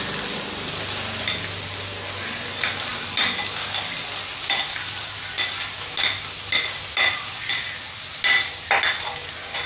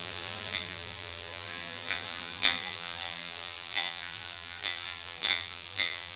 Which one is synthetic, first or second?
second